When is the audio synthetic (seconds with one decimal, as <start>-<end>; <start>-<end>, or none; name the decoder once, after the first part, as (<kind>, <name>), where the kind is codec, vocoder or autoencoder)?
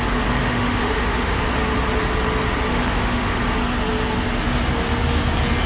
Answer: 0.4-1.4 (autoencoder, DAC-VAE); 2.7-3.4